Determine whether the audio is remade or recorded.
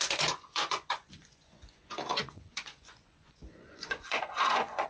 remade